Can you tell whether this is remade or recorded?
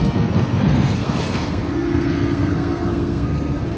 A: remade